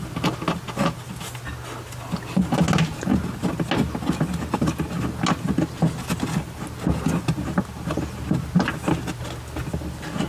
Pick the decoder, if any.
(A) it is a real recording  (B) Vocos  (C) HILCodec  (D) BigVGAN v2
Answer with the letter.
A